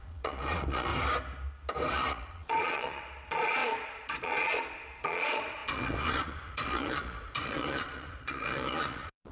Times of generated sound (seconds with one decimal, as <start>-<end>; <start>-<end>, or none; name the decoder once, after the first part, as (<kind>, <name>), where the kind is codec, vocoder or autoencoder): 0.0-0.9 (vocoder, Vocos); 1.9-9.3